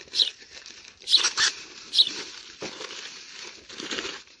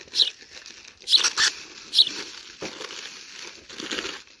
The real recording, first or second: second